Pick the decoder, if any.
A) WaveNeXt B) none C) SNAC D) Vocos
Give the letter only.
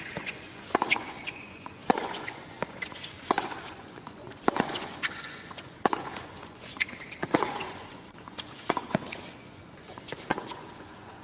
D